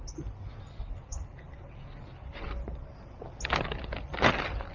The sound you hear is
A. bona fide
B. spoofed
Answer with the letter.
A